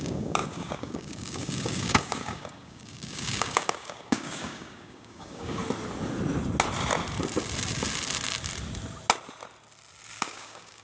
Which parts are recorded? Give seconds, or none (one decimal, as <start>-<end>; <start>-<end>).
5.6-10.2